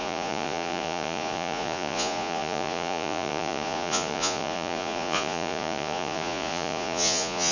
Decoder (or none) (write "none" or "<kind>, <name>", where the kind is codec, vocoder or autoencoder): vocoder, Vocos